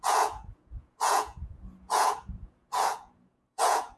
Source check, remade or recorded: remade